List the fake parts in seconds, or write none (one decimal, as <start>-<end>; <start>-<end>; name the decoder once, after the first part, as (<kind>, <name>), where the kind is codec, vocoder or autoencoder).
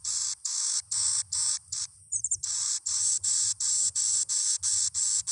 1.4-4.3 (vocoder, BigVGAN v2)